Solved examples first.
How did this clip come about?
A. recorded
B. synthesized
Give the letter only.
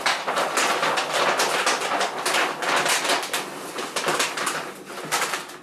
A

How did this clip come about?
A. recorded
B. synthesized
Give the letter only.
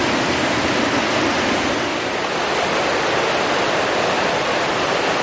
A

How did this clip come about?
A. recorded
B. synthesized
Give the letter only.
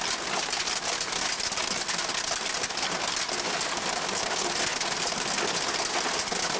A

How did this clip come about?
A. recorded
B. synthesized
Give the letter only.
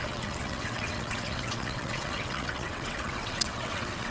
B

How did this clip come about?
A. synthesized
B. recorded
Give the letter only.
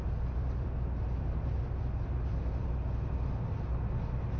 B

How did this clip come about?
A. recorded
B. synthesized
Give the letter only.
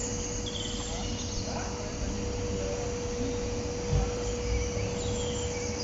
A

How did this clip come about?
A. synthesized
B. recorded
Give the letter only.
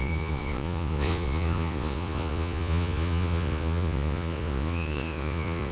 A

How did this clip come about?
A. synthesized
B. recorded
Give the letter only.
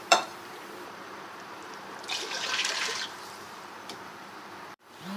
A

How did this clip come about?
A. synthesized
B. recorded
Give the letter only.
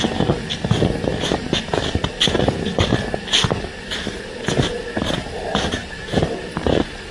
B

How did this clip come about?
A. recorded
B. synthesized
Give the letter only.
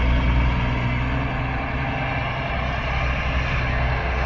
A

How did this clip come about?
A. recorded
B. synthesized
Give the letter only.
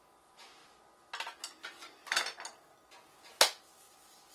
A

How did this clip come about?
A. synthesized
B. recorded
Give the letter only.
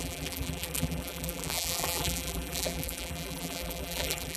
A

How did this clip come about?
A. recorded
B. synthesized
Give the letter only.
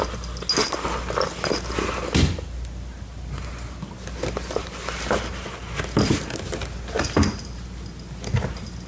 A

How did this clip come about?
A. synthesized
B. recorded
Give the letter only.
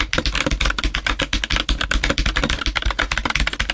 B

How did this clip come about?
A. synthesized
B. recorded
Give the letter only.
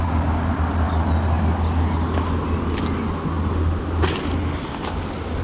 B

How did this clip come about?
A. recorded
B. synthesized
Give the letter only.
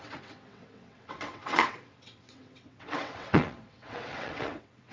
B